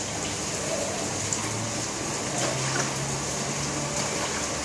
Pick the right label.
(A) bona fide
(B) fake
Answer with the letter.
A